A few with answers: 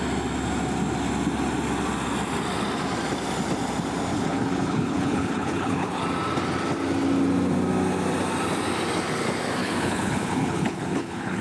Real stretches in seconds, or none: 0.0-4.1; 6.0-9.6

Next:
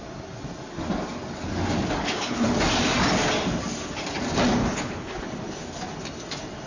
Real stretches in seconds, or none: 0.0-2.0; 2.5-4.6; 5.2-6.7

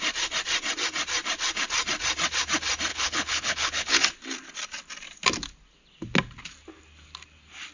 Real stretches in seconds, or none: 0.0-2.9; 4.0-7.7

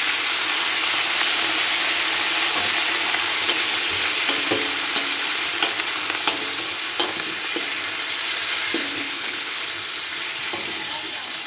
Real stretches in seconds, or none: 0.0-8.8; 9.6-11.5

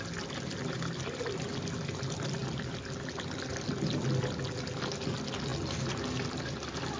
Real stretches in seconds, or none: 0.0-7.0

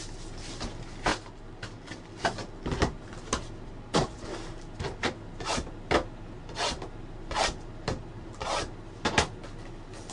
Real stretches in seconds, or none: 0.0-10.1